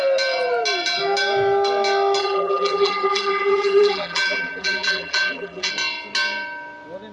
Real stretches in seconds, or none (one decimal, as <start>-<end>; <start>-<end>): 0.0-2.2; 5.7-7.1

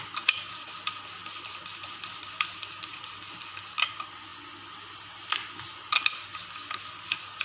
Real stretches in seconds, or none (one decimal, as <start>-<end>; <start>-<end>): 0.0-7.4

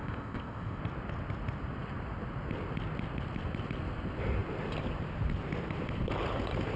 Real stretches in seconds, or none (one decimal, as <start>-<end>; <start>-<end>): 0.8-6.8

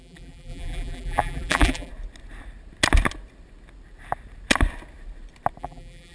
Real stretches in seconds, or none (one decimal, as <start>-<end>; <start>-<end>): 1.9-5.6

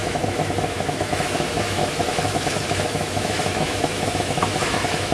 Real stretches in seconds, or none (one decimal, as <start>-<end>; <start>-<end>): none

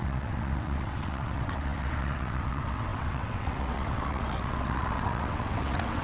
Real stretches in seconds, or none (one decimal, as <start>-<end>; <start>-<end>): none

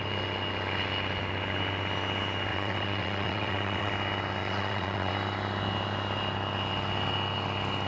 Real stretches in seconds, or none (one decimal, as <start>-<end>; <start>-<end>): 0.0-2.5; 3.9-4.4; 5.1-7.9

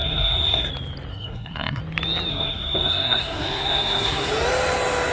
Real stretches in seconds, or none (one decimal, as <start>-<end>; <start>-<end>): 0.7-1.1; 1.8-2.3; 4.3-5.1